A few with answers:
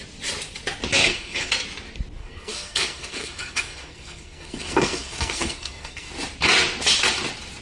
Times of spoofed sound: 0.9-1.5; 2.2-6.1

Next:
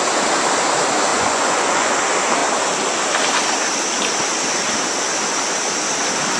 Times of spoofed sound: 1.1-1.9

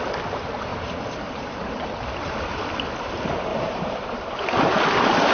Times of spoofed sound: 0.7-1.9; 3.5-4.7